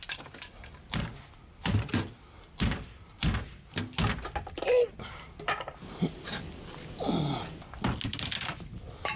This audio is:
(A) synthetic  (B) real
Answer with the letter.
B